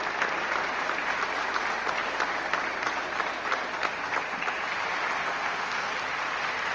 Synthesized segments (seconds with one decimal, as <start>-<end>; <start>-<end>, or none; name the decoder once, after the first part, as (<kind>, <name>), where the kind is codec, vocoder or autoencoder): 5.2-5.9 (codec, SNAC)